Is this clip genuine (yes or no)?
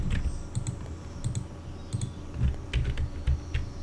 yes